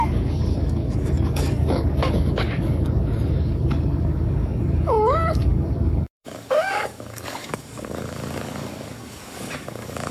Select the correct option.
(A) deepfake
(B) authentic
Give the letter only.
A